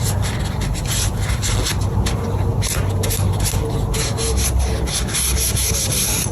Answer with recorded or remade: recorded